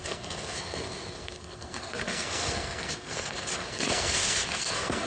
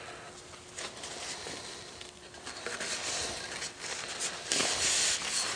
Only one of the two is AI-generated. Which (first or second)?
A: first